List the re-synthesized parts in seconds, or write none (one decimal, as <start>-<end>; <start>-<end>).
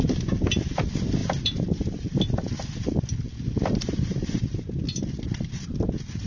1.2-2.2; 3.6-4.8